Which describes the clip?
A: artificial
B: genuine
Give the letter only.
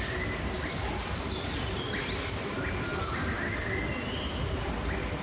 A